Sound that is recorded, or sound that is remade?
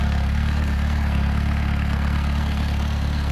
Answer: remade